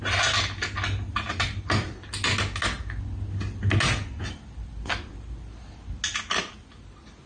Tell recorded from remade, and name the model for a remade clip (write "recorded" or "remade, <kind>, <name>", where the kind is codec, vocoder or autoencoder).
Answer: recorded